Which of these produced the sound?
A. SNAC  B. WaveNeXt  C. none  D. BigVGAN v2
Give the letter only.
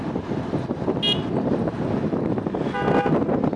C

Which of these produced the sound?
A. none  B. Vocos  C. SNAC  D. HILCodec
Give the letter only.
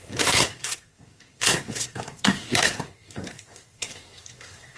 C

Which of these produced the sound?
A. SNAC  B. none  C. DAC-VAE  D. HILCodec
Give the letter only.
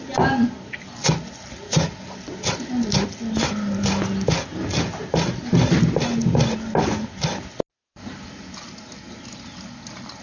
B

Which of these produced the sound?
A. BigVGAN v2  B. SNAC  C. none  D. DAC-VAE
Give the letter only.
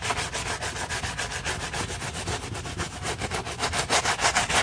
C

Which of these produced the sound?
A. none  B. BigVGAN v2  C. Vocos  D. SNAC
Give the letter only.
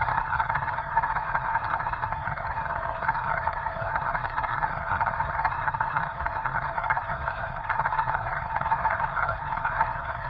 D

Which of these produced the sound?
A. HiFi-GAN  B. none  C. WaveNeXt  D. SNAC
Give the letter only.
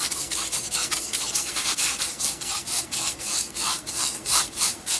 D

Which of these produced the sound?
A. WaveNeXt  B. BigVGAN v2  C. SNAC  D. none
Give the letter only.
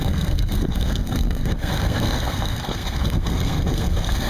C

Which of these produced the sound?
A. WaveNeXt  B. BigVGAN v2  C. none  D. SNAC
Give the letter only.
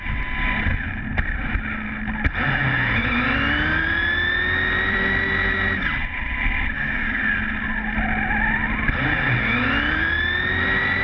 C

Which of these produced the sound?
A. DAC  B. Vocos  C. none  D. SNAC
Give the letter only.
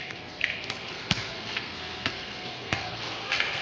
D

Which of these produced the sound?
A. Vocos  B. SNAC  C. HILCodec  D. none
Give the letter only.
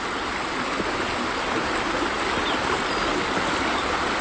D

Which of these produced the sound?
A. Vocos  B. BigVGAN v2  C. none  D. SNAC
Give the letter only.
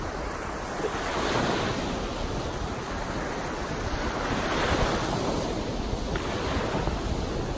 C